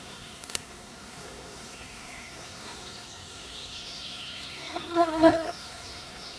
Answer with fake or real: fake